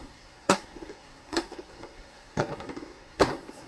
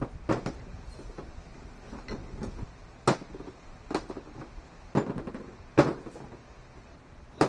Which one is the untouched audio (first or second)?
second